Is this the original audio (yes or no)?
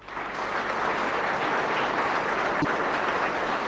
yes